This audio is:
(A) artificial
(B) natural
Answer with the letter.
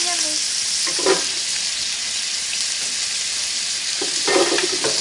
B